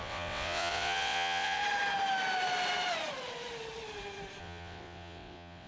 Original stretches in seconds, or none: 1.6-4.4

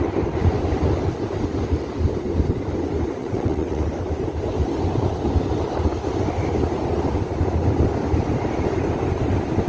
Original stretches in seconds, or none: 0.0-3.2; 3.9-9.7

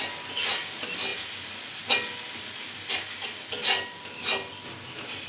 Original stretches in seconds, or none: 0.0-5.3

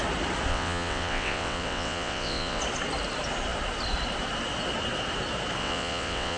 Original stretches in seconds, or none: 0.0-0.5; 2.6-5.6

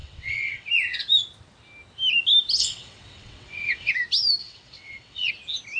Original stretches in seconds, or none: 0.7-2.6; 3.9-4.4; 5.3-5.8

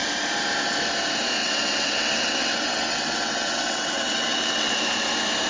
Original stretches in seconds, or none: 0.0-1.4; 4.7-5.5

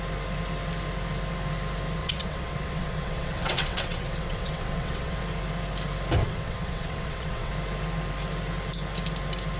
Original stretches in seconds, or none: 0.0-2.0; 5.2-6.2; 7.5-9.6

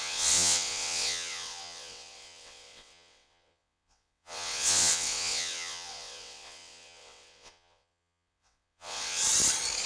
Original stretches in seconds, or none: 9.2-9.9